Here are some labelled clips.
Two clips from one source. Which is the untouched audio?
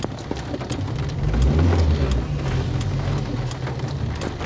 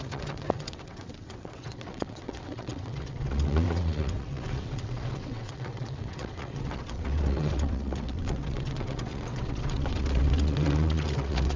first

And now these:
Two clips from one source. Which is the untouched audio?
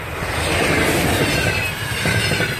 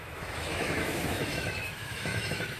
first